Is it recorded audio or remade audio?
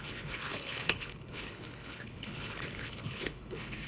remade